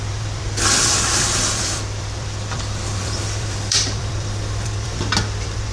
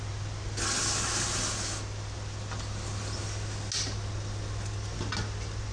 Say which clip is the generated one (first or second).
first